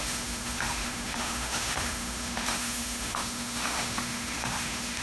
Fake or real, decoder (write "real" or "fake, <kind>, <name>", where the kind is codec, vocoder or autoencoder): fake, autoencoder, DAC-VAE